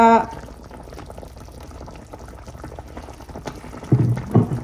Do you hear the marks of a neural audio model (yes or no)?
no